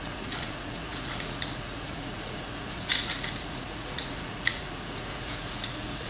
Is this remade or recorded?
remade